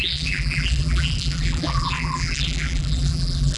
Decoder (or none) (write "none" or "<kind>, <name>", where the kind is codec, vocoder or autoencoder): vocoder, BigVGAN v2